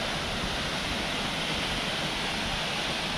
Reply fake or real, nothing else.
real